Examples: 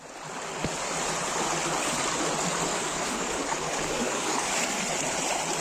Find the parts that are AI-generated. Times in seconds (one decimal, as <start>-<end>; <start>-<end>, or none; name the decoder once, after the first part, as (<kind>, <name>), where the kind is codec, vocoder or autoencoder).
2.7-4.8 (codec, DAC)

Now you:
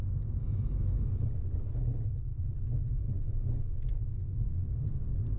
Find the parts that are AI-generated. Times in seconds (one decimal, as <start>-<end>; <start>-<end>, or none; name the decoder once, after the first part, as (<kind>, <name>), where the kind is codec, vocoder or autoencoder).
none

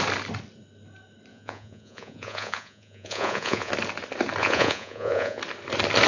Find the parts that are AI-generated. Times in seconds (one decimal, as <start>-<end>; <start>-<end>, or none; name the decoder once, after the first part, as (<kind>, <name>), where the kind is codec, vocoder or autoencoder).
1.3-3.7 (vocoder, Vocos); 4.4-5.4

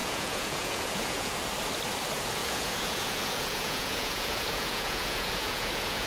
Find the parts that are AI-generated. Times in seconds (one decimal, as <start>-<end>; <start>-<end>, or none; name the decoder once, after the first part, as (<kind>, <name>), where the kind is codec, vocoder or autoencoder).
0.0-1.4 (vocoder, Vocos); 2.4-6.1

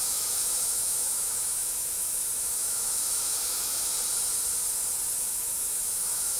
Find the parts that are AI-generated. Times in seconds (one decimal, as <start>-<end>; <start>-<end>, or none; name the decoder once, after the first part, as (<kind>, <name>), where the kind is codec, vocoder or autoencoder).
0.0-3.9 (autoencoder, DAC-VAE); 5.2-6.4

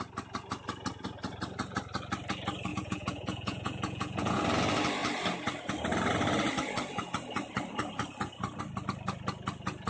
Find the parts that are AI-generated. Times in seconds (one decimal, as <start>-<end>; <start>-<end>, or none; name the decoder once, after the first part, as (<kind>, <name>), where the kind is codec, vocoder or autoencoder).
2.7-4.4 (vocoder, Vocos)

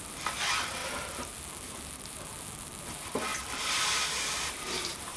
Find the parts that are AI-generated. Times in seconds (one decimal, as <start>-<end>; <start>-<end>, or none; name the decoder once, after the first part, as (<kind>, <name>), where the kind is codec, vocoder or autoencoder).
0.0-5.2 (vocoder, BigVGAN v2)